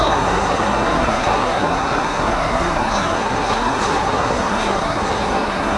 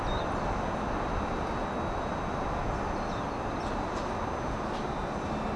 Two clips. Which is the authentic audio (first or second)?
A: second